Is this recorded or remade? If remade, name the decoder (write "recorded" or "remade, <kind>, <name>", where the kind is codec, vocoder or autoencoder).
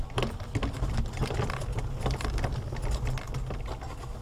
recorded